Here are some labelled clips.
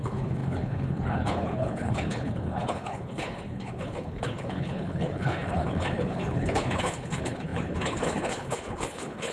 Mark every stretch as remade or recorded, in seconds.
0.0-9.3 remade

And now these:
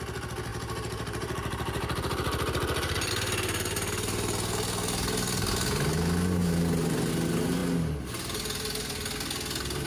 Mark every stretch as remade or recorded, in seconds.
0.0-0.5 recorded; 0.5-3.1 remade; 3.1-6.4 recorded; 6.4-7.1 remade; 7.1-9.9 recorded

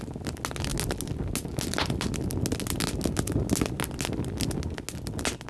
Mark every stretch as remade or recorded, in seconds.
0.0-5.5 recorded

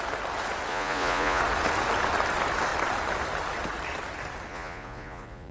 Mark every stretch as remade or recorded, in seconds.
0.0-0.7 recorded; 0.7-1.4 remade; 1.4-4.5 recorded; 4.5-5.5 remade

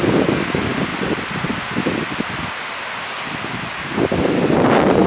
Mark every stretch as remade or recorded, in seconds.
0.0-0.9 recorded; 0.9-1.9 remade; 1.9-5.1 recorded

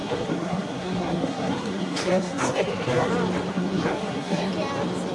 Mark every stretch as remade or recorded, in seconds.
0.0-3.1 remade; 3.1-3.5 recorded; 3.5-4.5 remade; 4.5-5.1 recorded

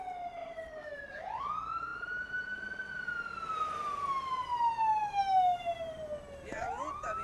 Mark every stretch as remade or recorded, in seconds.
0.0-0.4 recorded; 0.4-1.4 remade; 1.4-7.2 recorded

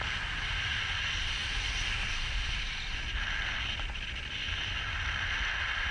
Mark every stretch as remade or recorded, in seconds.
0.0-5.9 recorded